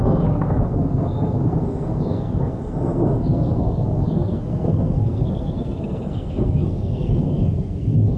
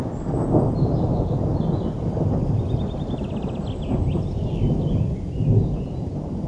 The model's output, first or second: first